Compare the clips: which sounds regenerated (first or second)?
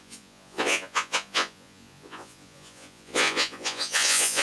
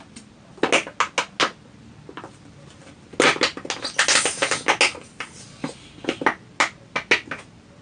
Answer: first